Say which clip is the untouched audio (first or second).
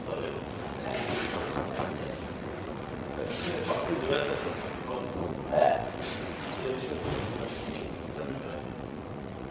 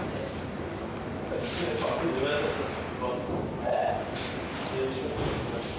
second